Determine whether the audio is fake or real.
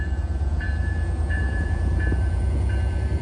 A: fake